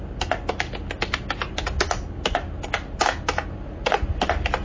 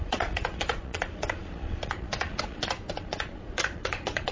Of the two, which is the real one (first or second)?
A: first